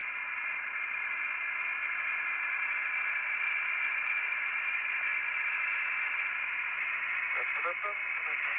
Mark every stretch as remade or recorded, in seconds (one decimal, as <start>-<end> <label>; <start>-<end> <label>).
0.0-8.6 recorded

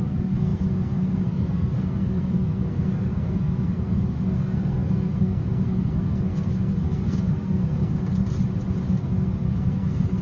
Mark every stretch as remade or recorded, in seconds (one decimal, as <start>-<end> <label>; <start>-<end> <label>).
0.0-8.2 remade; 8.2-8.9 recorded; 8.9-10.2 remade

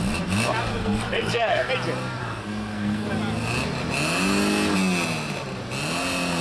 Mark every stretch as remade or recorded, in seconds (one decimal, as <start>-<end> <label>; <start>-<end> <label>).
0.0-0.8 recorded; 0.8-1.7 remade; 1.7-2.2 recorded; 2.2-3.1 remade; 3.1-6.4 recorded

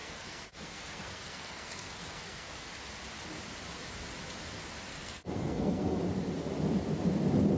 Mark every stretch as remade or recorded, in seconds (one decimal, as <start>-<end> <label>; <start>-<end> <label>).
0.0-2.7 remade; 2.7-4.9 recorded; 4.9-6.0 remade; 6.0-7.6 recorded